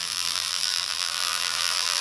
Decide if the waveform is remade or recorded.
remade